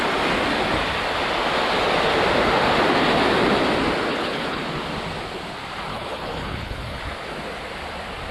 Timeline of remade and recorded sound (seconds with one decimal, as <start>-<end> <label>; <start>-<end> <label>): 0.0-4.1 recorded; 4.1-4.6 remade; 4.6-5.9 recorded; 5.9-7.0 remade; 7.0-8.3 recorded